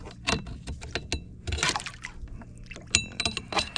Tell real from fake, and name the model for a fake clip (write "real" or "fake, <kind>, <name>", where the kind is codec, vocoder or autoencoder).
real